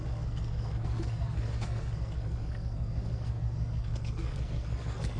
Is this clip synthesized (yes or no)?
yes